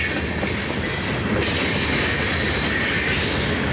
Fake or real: real